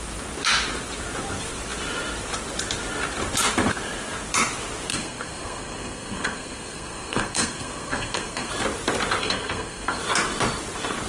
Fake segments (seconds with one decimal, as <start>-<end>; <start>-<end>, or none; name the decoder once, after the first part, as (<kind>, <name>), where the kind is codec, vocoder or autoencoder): 4.9-8.5 (codec, SNAC); 9.2-10.0